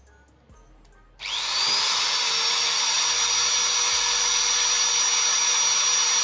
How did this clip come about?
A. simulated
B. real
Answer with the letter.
B